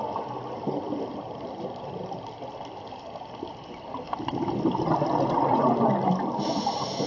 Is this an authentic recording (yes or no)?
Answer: yes